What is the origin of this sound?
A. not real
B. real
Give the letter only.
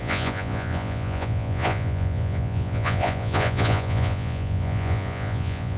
A